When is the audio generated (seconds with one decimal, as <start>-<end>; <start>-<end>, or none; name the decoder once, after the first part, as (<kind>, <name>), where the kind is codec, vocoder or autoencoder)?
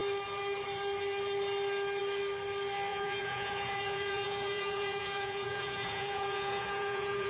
2.9-7.3 (vocoder, Vocos)